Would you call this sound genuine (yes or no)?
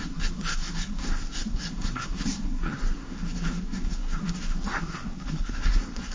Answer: no